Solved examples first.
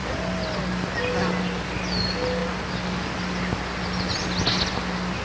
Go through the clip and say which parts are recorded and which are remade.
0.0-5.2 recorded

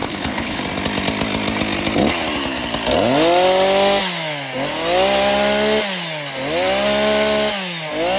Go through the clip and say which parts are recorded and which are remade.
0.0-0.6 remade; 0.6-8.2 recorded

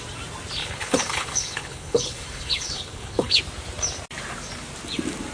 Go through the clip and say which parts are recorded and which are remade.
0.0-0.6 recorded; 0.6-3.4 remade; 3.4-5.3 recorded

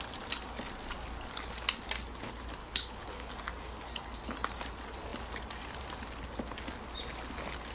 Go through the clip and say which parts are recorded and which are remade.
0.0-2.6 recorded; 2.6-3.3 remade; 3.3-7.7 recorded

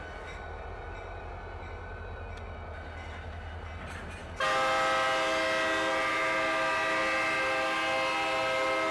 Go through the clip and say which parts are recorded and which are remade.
0.0-8.9 recorded